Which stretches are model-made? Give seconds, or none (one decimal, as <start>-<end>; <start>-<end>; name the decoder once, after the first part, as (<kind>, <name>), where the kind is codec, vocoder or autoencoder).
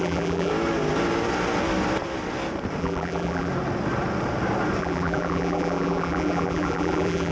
0.0-0.5 (vocoder, BigVGAN v2); 2.8-3.5; 4.8-7.3